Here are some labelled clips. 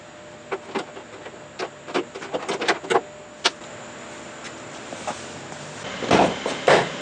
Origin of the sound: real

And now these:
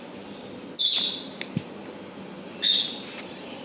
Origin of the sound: real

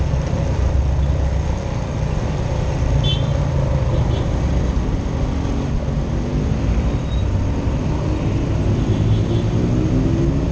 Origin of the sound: real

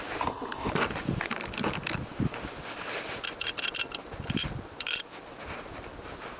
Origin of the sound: real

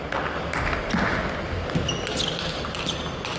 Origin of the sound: real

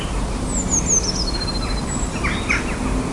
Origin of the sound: real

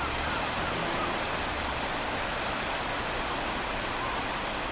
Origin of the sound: real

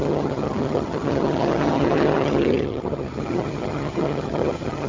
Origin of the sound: fake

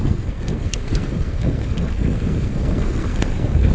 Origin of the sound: fake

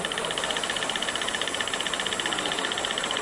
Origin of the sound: real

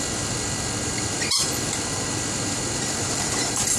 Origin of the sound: fake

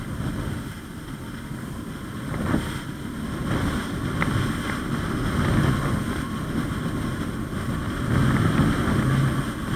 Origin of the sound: real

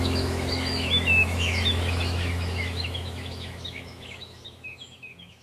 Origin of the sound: fake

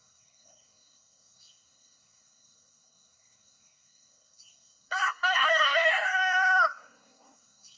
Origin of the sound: fake